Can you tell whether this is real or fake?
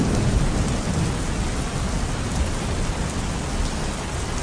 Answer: real